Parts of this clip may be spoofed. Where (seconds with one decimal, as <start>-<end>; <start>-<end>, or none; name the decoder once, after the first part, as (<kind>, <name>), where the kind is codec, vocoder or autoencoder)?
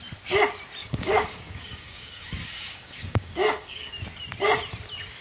0.8-3.9 (codec, DAC)